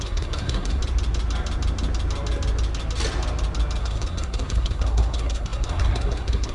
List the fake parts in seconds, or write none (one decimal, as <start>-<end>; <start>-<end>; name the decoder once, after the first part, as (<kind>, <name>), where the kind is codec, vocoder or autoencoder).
0.0-0.8 (codec, SNAC); 3.8-6.5